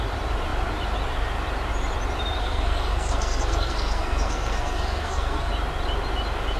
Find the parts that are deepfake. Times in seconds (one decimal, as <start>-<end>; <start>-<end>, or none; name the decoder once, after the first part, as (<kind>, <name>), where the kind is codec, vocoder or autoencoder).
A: 2.4-5.5 (codec, SNAC)